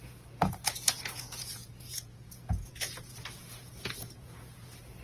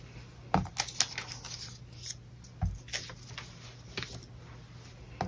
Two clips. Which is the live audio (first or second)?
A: second